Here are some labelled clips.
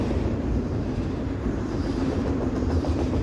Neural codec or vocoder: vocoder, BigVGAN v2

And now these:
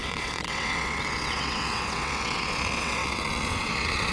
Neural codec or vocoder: vocoder, WaveNeXt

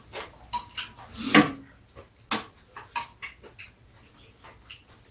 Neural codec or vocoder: none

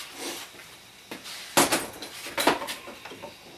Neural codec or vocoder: none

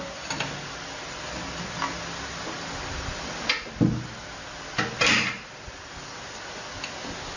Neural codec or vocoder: none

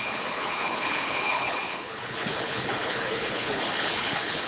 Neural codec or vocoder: codec, HILCodec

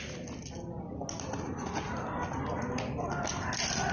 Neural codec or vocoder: none